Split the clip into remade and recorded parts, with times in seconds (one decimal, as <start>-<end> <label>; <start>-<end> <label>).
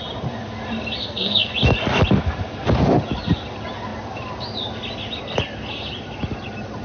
0.0-1.0 recorded; 1.0-1.5 remade; 1.5-6.8 recorded